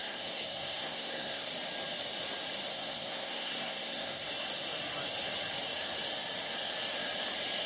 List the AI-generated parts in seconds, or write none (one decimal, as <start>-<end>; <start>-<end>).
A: 0.0-1.5; 2.7-4.3